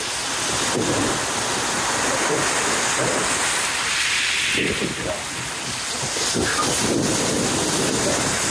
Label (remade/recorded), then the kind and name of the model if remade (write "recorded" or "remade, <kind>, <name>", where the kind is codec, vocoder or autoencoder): recorded